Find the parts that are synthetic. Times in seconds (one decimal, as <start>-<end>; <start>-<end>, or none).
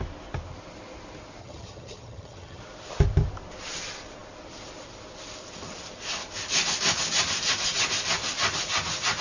1.4-2.6